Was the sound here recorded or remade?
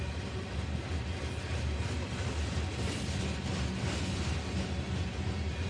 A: recorded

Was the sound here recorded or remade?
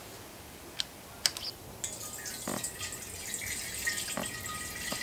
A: recorded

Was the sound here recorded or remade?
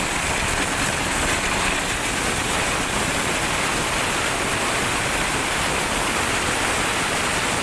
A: recorded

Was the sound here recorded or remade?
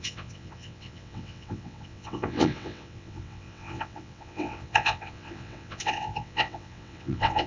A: remade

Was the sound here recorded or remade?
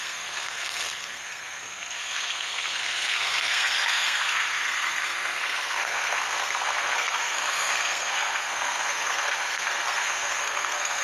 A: remade